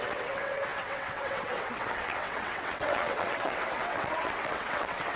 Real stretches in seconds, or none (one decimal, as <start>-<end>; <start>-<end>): none